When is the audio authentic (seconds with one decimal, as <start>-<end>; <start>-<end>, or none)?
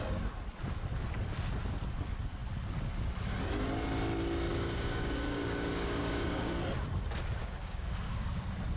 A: 0.0-4.5; 6.5-7.4; 8.4-8.8